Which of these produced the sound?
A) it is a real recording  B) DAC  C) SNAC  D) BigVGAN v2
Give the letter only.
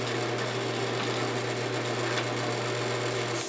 A